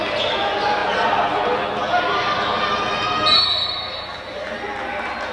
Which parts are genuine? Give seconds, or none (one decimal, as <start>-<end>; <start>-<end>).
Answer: 0.0-5.3